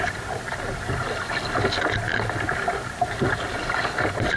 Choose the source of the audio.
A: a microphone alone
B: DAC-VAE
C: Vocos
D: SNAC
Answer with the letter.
A